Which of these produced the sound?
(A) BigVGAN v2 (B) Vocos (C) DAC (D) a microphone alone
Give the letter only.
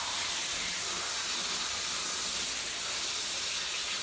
D